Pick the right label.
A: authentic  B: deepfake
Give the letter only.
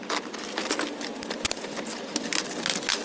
A